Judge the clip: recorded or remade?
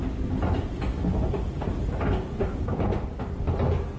recorded